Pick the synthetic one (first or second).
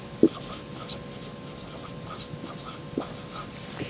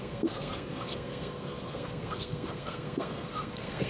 second